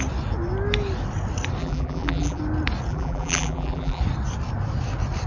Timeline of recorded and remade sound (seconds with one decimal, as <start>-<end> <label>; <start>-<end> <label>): 0.0-1.6 recorded; 1.6-2.4 remade; 2.4-2.9 recorded; 2.9-4.0 remade; 4.0-5.3 recorded